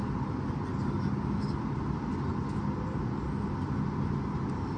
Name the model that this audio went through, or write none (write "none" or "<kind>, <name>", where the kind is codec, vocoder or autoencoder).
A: none